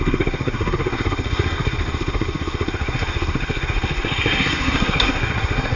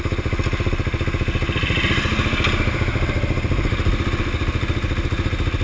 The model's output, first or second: first